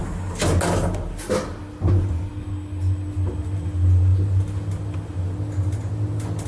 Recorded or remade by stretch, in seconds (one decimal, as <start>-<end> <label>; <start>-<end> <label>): 0.0-6.5 recorded